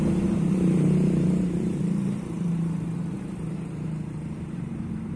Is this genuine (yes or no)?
no